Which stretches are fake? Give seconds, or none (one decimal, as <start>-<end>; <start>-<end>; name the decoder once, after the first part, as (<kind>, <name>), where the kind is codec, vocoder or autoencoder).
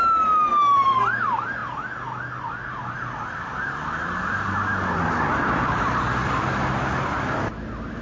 none